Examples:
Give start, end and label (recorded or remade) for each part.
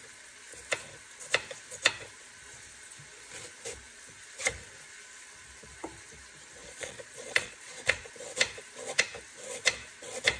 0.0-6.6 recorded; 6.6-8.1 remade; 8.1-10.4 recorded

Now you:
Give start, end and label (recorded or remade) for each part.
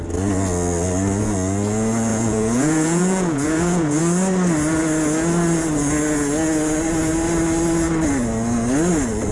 0.0-2.1 recorded; 2.1-4.0 remade; 4.0-9.3 recorded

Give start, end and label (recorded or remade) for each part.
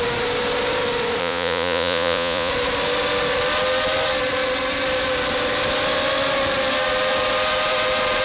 0.0-1.2 recorded; 1.2-2.5 remade; 2.5-8.2 recorded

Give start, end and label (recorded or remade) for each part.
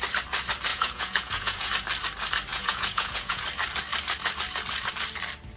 0.0-0.7 recorded; 0.7-1.7 remade; 1.7-2.5 recorded; 2.5-3.4 remade; 3.4-5.6 recorded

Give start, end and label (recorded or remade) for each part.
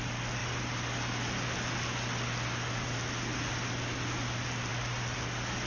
0.0-5.7 recorded